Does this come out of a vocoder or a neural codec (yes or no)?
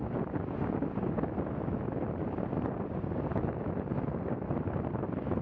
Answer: no